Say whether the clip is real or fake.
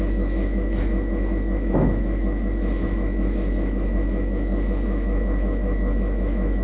fake